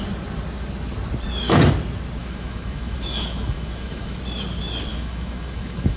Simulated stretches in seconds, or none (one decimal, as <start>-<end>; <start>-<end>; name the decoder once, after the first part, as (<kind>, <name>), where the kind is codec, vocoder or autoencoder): 2.2-4.2 (autoencoder, DAC-VAE); 4.9-6.0